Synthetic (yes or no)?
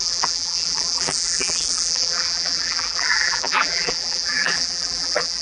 yes